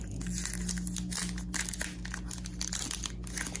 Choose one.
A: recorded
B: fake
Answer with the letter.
A